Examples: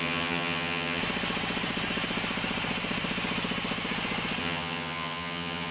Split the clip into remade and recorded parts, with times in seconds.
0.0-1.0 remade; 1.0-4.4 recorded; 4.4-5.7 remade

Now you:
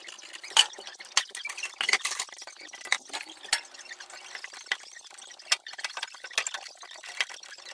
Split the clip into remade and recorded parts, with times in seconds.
0.0-7.7 recorded

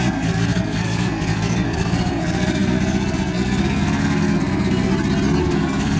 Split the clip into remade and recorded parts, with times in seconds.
0.0-4.9 remade; 4.9-5.4 recorded; 5.4-6.0 remade

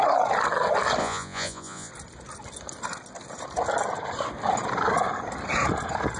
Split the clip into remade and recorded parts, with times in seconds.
0.0-1.0 recorded; 1.0-1.9 remade; 1.9-6.2 recorded

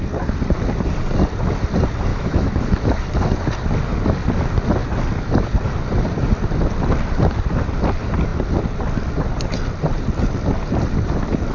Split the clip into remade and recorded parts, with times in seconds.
0.0-2.1 recorded; 2.1-2.6 remade; 2.6-11.5 recorded

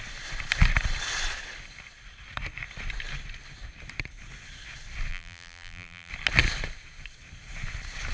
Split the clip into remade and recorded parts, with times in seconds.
0.0-5.1 recorded; 5.1-6.1 remade; 6.1-8.1 recorded

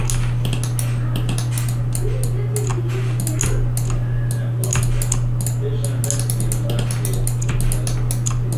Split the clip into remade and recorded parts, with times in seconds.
0.0-8.6 recorded